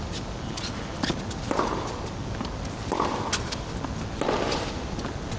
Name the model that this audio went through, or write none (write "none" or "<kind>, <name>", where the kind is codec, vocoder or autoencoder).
none